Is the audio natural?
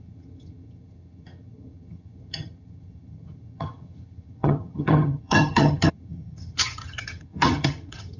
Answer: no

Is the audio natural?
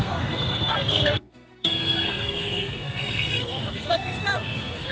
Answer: no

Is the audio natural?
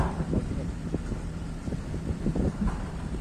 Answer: no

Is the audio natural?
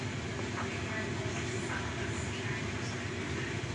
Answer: yes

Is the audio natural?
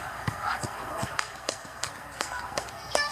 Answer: no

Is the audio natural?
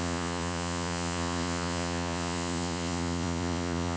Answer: no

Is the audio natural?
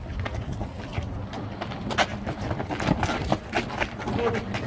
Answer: yes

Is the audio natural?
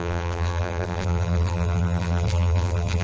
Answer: no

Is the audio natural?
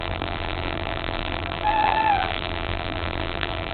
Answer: no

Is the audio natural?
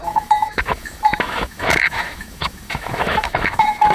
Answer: no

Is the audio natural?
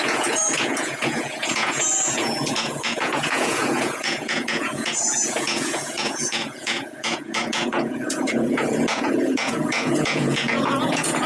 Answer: no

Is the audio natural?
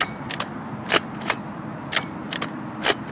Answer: yes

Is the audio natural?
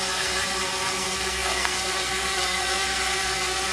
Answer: no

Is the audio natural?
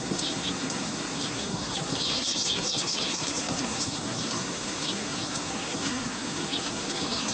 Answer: no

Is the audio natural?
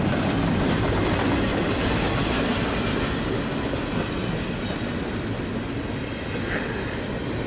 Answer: yes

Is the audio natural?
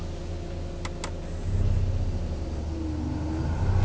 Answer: yes